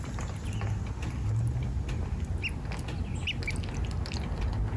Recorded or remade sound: recorded